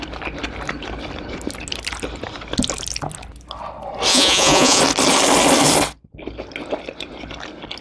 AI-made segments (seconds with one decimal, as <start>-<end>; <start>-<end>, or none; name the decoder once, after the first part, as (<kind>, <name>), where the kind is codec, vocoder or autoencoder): 4.1-4.8 (vocoder, Vocos)